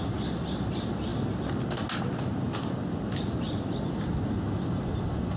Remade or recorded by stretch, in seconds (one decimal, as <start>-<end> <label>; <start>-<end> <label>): 0.0-5.4 recorded